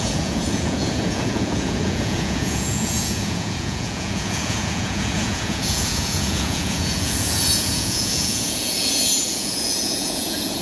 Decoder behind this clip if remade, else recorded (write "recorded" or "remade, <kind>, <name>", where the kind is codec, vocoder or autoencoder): remade, vocoder, Vocos